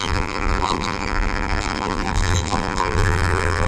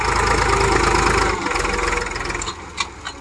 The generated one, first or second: first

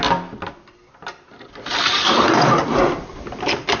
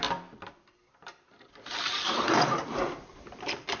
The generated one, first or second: second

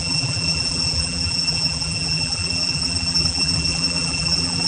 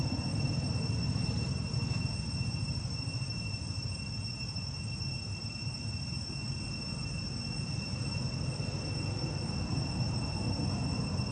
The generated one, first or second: first